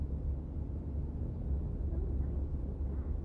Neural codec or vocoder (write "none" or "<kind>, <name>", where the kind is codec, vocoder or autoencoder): none